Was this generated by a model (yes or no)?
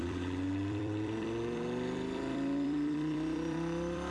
yes